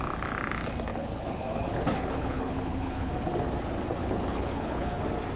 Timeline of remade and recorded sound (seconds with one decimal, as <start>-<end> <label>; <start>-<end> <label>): 0.0-0.9 recorded; 0.9-3.1 remade; 3.1-4.0 recorded; 4.0-5.0 remade; 5.0-5.4 recorded